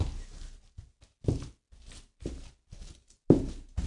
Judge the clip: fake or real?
real